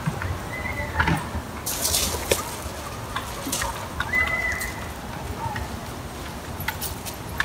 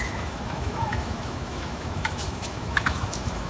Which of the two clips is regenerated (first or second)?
second